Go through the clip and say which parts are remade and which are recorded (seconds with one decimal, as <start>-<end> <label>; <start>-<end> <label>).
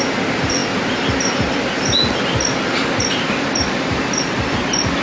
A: 0.0-5.0 recorded